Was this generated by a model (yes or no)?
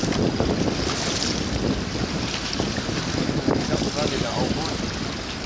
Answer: no